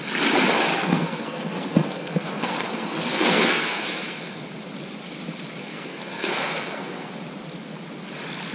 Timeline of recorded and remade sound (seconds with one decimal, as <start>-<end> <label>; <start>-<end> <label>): 0.0-0.7 recorded; 0.7-4.4 remade; 4.4-5.6 recorded; 5.6-7.1 remade; 7.1-8.5 recorded